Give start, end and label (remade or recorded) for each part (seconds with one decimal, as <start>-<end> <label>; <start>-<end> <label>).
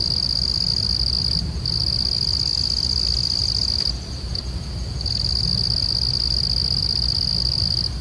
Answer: 0.0-8.0 recorded